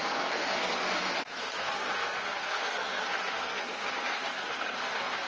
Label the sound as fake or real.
fake